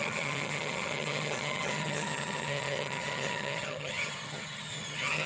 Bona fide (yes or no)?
no